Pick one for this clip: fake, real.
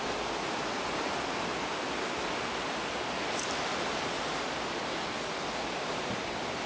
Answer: real